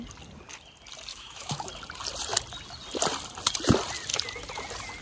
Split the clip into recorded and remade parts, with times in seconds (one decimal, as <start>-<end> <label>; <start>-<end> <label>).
0.0-1.1 recorded; 1.1-1.7 remade; 1.7-5.0 recorded